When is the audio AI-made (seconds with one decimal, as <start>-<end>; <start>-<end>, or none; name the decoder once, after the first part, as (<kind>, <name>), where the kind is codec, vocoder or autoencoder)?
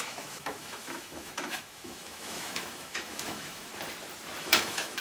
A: 0.0-3.7 (autoencoder, DAC-VAE); 4.4-5.0